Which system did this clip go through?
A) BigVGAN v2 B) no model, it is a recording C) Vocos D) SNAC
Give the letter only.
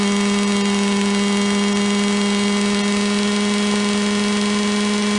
B